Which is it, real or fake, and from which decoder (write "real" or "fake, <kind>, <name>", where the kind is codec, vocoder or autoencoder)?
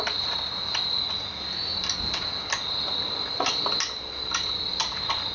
real